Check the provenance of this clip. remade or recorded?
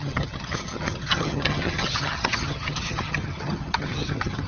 remade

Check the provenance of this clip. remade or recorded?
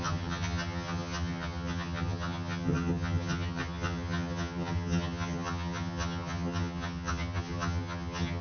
remade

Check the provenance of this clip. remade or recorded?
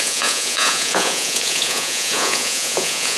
remade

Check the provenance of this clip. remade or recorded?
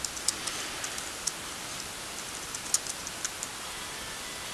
recorded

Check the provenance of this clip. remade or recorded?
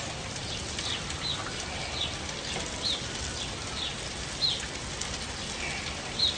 recorded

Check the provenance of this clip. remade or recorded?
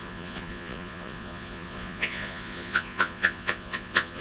remade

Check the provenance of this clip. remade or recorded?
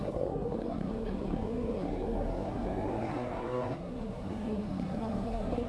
remade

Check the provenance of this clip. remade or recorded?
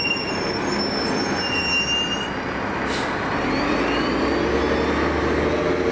recorded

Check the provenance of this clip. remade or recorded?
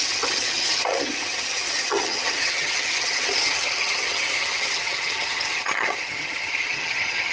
remade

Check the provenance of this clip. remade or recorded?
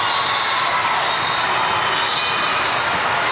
recorded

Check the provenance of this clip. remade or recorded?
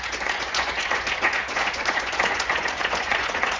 remade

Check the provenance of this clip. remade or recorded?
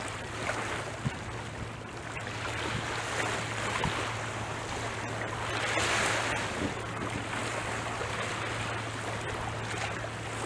recorded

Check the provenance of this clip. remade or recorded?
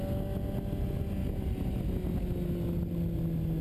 recorded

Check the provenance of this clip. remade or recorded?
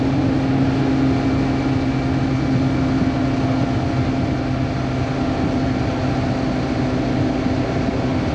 recorded